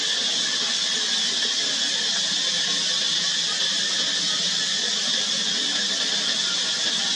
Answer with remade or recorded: recorded